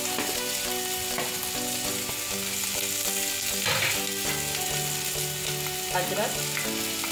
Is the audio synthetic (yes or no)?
no